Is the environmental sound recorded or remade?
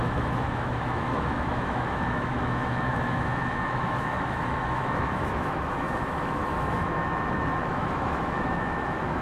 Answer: remade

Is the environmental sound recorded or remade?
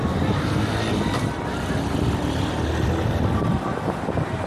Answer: recorded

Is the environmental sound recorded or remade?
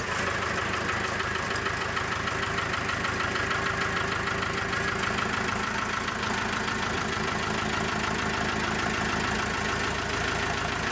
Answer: recorded